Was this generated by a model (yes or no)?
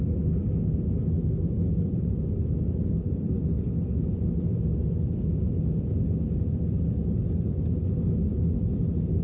no